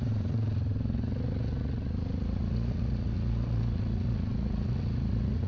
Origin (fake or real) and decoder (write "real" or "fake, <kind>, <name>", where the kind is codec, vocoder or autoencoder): fake, vocoder, Vocos